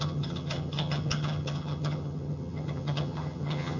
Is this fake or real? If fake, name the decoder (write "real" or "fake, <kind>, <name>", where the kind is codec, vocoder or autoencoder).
fake, vocoder, HiFi-GAN